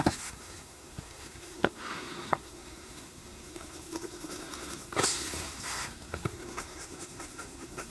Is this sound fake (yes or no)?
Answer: yes